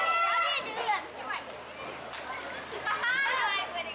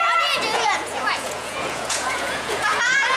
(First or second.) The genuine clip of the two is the first